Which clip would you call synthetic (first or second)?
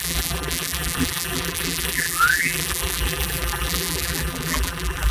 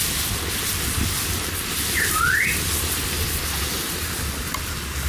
first